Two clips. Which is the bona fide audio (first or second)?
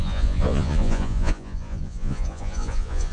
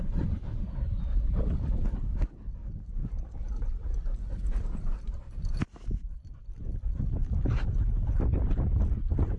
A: second